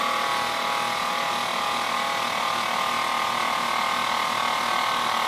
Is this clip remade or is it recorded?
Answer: recorded